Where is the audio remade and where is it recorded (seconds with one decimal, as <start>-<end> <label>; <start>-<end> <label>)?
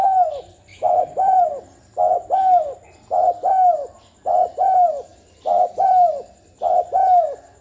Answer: 0.0-0.7 recorded; 0.7-1.4 remade; 1.4-7.6 recorded